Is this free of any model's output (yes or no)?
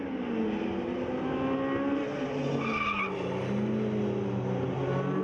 yes